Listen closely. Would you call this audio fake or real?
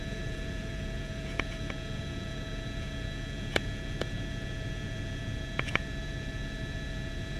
fake